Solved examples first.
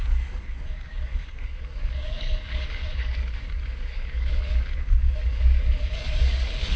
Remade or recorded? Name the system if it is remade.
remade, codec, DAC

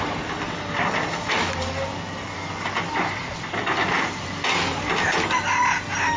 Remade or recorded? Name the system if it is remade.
recorded